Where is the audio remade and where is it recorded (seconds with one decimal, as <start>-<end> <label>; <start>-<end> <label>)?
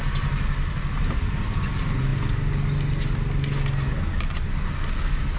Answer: 0.0-5.4 recorded